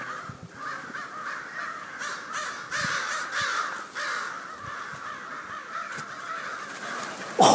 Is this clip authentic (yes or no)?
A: yes